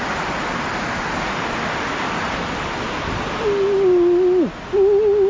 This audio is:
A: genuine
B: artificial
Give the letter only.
A